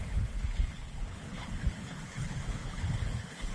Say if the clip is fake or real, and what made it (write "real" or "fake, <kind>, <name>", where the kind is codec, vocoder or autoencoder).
fake, codec, HILCodec